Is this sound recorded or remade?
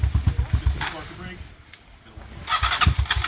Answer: recorded